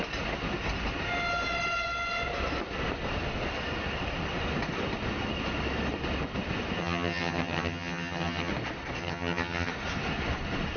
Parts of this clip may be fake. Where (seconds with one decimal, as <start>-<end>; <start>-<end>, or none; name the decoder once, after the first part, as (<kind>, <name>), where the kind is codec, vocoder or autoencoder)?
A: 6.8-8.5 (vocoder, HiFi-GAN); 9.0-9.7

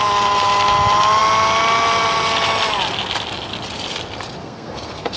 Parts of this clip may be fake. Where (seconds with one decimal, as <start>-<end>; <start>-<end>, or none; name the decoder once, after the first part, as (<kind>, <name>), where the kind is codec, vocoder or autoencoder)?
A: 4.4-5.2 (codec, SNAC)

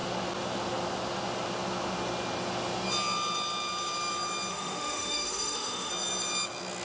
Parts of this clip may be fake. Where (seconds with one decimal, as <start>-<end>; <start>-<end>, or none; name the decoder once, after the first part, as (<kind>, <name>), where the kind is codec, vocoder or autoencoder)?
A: 4.5-5.9 (autoencoder, DAC-VAE)

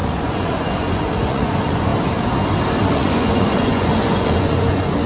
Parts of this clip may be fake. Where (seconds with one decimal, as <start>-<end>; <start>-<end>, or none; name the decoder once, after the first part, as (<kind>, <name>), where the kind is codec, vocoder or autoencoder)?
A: 0.0-1.9 (vocoder, Vocos); 2.9-5.1

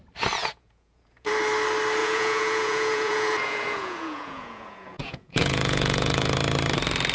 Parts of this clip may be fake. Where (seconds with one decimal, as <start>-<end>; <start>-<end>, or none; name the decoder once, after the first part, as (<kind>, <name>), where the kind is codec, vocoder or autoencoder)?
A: 0.4-1.3 (vocoder, Vocos); 2.0-6.3